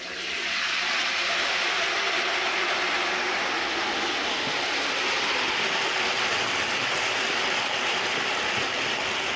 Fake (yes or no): no